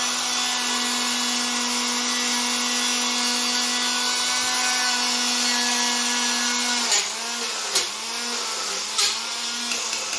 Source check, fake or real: real